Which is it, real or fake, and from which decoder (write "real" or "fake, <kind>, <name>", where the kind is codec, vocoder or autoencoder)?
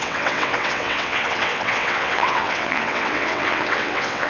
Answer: fake, vocoder, WaveNeXt